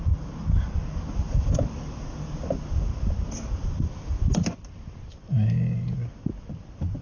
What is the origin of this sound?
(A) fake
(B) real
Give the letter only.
B